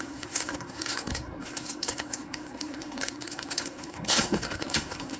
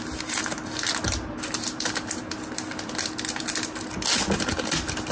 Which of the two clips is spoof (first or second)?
first